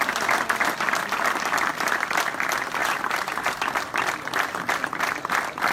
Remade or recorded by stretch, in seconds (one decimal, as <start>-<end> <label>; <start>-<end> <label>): 0.0-2.8 recorded; 2.8-3.6 remade; 3.6-5.7 recorded